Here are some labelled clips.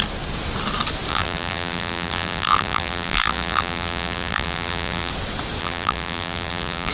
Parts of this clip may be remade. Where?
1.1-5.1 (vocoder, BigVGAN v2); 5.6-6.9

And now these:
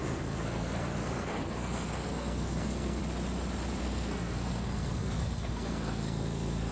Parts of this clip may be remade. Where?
0.0-3.0 (codec, SNAC); 3.8-6.7

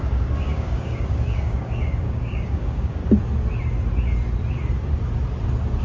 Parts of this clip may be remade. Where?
0.0-3.0 (codec, DAC)

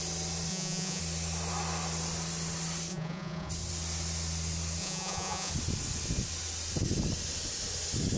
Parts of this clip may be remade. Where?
0.5-1.0 (vocoder, Vocos); 2.9-3.5; 4.8-5.5

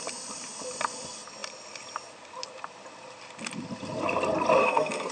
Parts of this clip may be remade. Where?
4.6-5.1 (codec, SNAC)